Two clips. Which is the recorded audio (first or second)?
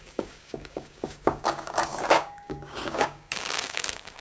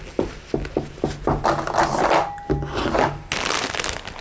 second